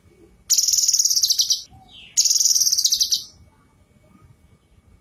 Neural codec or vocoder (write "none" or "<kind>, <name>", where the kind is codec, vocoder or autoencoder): none